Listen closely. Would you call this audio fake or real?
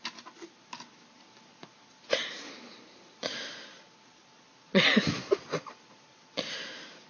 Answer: real